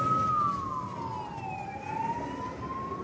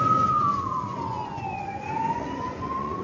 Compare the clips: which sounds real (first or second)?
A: first